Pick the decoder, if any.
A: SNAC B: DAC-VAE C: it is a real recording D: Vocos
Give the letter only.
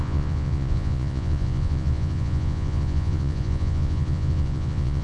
D